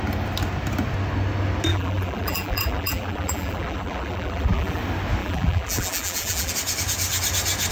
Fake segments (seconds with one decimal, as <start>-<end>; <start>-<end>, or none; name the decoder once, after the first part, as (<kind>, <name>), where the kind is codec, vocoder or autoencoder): 1.7-4.8 (vocoder, BigVGAN v2); 5.2-6.5